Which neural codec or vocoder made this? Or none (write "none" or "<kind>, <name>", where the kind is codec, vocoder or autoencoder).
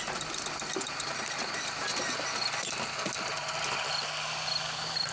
none